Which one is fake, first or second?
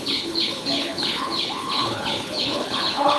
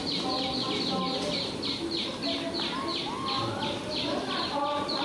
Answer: first